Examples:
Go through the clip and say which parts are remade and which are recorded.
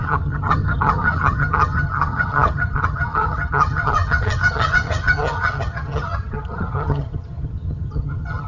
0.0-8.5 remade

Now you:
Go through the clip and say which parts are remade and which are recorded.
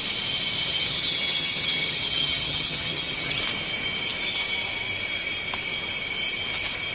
0.0-0.6 recorded; 0.6-3.4 remade; 3.4-6.9 recorded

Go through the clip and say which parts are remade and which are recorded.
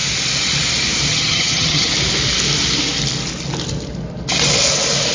0.0-1.1 recorded; 1.1-1.9 remade; 1.9-5.1 recorded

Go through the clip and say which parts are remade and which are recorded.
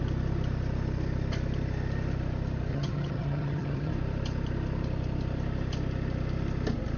0.0-2.7 recorded; 2.7-3.9 remade; 3.9-7.0 recorded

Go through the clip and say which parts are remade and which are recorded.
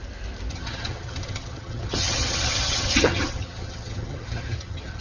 0.0-0.5 recorded; 0.5-5.0 remade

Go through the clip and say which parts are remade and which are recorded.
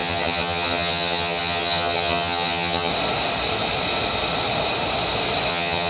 0.0-2.9 remade; 2.9-5.5 recorded; 5.5-5.9 remade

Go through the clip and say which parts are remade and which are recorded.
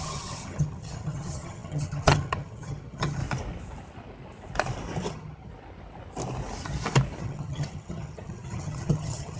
0.0-3.2 remade; 3.2-5.1 recorded; 5.1-5.5 remade; 5.5-7.2 recorded; 7.2-9.4 remade